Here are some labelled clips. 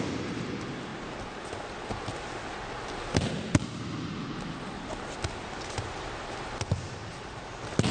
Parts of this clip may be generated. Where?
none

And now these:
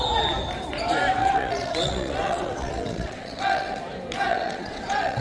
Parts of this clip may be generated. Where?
1.2-3.8 (vocoder, WaveNeXt); 4.3-5.2

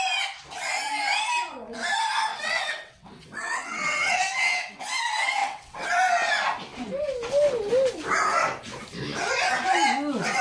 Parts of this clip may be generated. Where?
2.3-4.8 (vocoder, WaveNeXt); 5.4-5.9

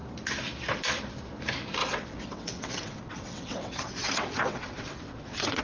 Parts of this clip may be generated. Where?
1.8-5.6 (vocoder, WaveNeXt)

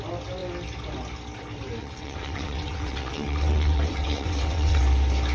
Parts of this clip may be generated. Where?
1.8-4.8 (vocoder, WaveNeXt)

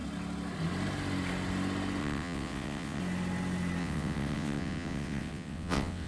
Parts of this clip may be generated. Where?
2.0-3.0 (vocoder, WaveNeXt); 3.8-6.1

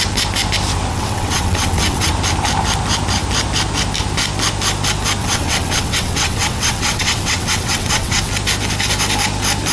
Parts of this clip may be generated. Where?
0.9-2.1 (vocoder, WaveNeXt); 5.2-8.3

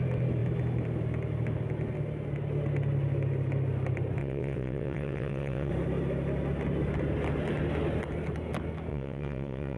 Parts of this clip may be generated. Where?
4.2-5.7 (vocoder, WaveNeXt); 8.9-9.8